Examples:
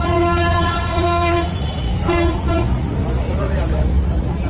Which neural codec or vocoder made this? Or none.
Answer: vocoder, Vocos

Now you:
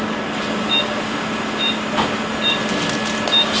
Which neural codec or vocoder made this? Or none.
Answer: none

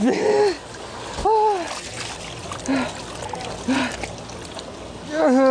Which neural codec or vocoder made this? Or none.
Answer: none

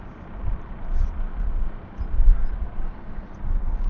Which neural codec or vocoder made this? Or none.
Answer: none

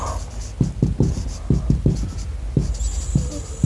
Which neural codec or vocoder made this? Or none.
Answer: none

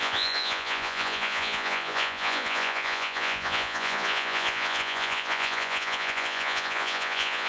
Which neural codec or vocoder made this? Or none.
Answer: vocoder, Vocos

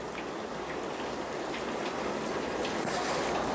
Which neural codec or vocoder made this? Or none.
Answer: none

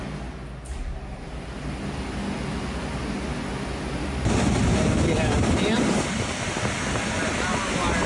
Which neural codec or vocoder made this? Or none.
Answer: none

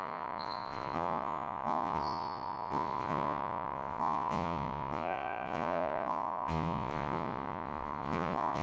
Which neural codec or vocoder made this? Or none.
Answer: vocoder, Vocos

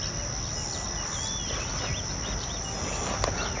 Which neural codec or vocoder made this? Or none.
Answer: none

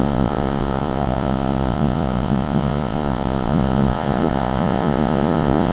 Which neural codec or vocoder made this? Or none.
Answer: vocoder, Vocos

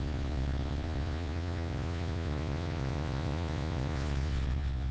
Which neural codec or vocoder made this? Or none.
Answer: vocoder, Vocos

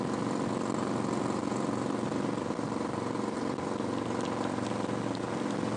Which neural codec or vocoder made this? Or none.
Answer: none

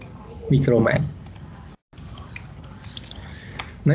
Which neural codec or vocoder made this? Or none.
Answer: none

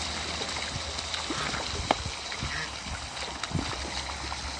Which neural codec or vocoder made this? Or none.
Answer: none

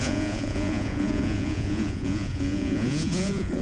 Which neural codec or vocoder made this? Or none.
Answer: vocoder, Vocos